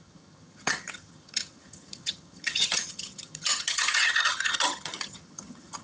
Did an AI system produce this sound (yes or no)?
yes